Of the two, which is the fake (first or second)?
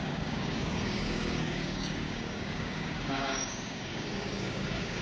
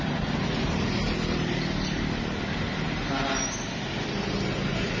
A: first